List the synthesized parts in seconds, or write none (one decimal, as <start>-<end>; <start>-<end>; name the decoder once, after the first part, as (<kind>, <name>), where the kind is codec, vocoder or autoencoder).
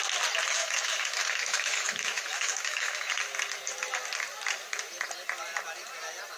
0.6-3.1 (autoencoder, DAC-VAE)